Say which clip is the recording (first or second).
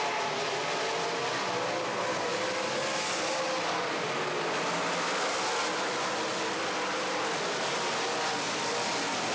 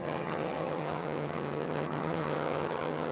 first